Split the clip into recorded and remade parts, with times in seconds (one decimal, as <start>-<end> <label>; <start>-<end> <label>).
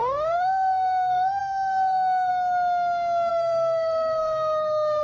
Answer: 0.0-2.3 remade; 2.3-3.3 recorded; 3.3-5.0 remade